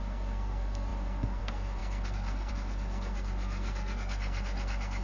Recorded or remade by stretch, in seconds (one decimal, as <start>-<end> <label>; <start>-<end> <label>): 0.0-5.0 remade